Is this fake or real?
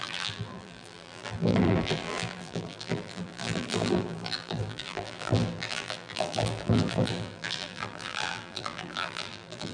fake